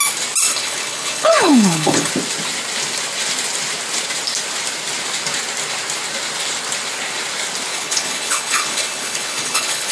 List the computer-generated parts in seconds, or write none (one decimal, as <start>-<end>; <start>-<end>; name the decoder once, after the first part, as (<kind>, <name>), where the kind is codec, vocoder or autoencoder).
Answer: 0.5-2.1 (codec, HILCodec); 7.7-9.9

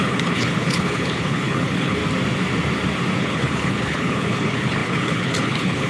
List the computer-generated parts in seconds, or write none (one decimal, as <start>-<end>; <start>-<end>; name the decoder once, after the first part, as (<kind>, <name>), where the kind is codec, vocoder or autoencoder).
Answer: 0.0-2.0 (codec, HILCodec); 3.2-5.9

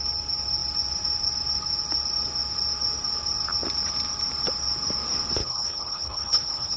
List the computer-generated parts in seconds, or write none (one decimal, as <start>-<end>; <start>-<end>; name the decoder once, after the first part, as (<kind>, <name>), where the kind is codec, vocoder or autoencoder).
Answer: 5.4-6.8 (codec, HILCodec)

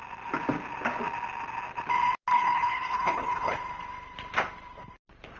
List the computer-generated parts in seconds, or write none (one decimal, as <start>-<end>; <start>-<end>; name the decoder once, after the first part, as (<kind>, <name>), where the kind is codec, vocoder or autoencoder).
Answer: 2.3-3.6 (codec, HILCodec)